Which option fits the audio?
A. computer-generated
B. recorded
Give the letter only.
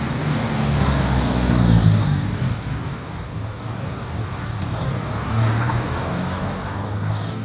A